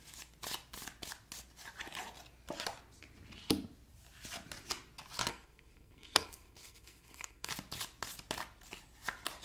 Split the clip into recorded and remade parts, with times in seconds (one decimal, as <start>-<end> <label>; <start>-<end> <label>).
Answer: 0.0-5.3 recorded; 5.3-7.5 remade; 7.5-9.4 recorded